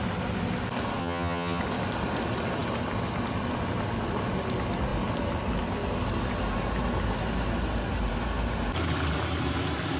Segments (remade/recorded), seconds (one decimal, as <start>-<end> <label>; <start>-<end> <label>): 0.0-1.0 recorded; 1.0-1.6 remade; 1.6-10.0 recorded